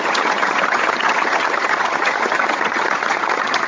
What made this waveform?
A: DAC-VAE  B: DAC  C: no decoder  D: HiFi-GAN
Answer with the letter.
D